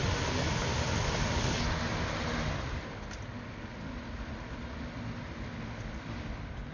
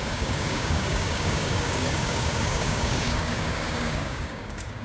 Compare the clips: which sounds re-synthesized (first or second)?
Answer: second